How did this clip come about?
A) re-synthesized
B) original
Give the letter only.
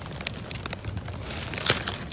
B